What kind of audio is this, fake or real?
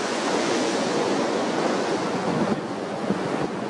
fake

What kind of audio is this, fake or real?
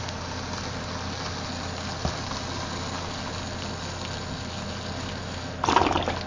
real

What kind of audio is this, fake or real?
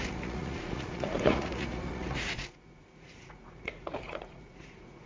fake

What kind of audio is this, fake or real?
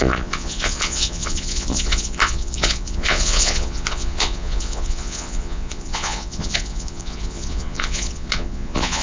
fake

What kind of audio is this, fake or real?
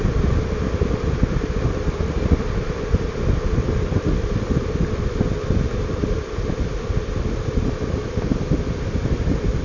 real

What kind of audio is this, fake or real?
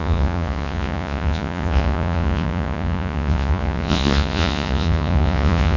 fake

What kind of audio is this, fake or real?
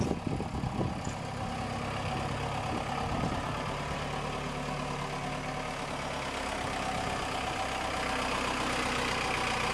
real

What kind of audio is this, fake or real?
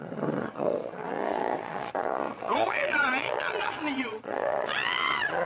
fake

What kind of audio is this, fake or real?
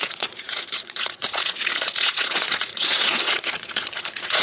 fake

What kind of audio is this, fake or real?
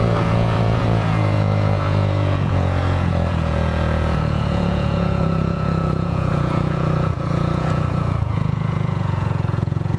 fake